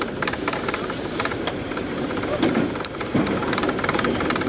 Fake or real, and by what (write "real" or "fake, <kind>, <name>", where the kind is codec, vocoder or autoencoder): fake, vocoder, BigVGAN v2